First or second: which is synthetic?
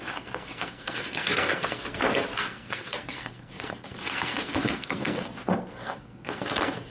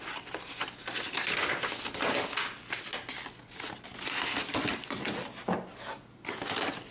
first